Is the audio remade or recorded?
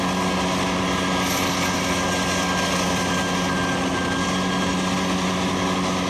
recorded